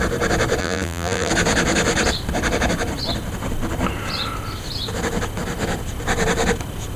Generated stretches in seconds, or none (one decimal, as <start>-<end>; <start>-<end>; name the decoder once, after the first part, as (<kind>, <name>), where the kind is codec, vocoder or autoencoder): 0.6-1.3 (vocoder, BigVGAN v2)